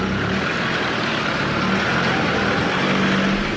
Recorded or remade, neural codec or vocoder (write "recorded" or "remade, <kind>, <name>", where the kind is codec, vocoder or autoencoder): recorded